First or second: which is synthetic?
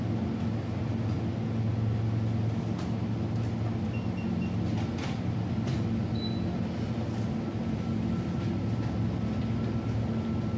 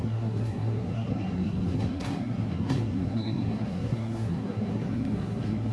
second